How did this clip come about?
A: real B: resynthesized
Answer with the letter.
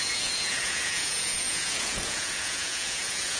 B